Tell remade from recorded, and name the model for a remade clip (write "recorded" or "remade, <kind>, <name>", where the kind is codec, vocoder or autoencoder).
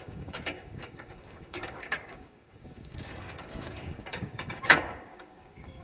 remade, codec, DAC